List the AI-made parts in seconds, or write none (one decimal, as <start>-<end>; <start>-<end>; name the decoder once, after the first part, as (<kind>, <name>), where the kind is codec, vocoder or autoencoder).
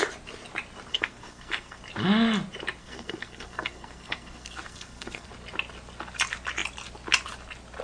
0.9-1.8 (codec, SNAC); 2.8-5.3